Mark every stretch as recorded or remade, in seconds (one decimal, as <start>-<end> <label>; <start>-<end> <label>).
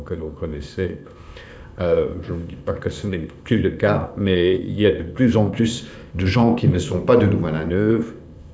0.0-6.9 remade; 6.9-7.7 recorded; 7.7-8.5 remade